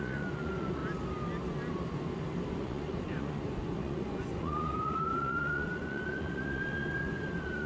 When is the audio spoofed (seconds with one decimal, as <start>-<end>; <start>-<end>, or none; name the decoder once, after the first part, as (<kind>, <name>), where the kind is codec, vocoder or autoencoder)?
0.0-0.8 (vocoder, Vocos); 2.5-7.7